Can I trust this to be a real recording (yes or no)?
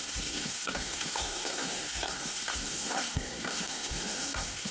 no